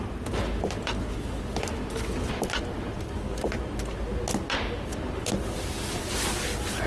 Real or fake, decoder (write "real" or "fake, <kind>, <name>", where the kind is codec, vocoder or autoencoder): real